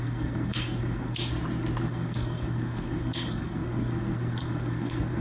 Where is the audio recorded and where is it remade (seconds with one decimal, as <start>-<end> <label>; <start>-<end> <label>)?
0.0-1.2 remade; 1.2-1.8 recorded; 1.8-5.2 remade